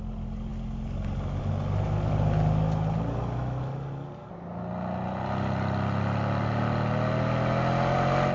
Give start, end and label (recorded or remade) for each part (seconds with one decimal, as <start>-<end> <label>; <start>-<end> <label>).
0.0-8.3 recorded